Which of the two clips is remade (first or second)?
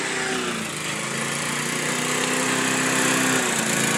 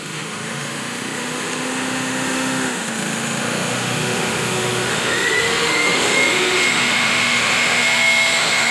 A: second